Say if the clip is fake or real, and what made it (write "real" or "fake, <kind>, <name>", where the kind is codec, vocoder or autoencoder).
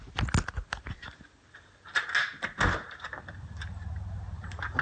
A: real